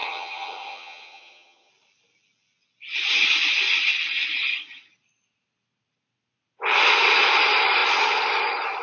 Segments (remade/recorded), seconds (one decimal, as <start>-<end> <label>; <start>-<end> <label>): 0.0-1.7 remade; 1.7-8.8 recorded

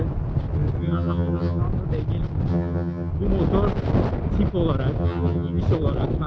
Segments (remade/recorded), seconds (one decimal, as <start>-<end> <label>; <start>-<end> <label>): 0.0-0.8 recorded; 0.8-1.6 remade; 1.6-2.5 recorded; 2.5-3.1 remade; 3.1-5.0 recorded; 5.0-5.6 remade; 5.6-6.3 recorded

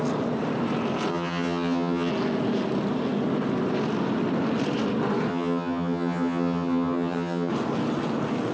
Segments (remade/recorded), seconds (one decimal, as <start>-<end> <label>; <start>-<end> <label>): 0.0-1.1 recorded; 1.1-2.1 remade; 2.1-5.3 recorded; 5.3-7.5 remade; 7.5-8.5 recorded

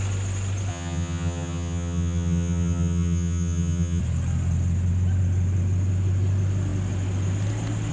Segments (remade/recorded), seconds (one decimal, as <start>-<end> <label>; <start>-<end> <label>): 0.0-0.7 recorded; 0.7-4.0 remade; 4.0-7.9 recorded

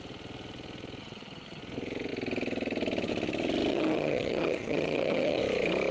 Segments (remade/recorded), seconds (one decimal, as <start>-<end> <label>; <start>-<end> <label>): 0.0-1.0 recorded; 1.0-1.6 remade; 1.6-3.7 recorded; 3.7-5.4 remade; 5.4-5.9 recorded

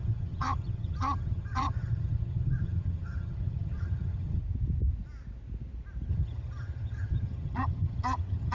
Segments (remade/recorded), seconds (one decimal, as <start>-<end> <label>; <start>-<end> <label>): 0.0-4.4 remade; 4.4-6.1 recorded; 6.1-8.5 remade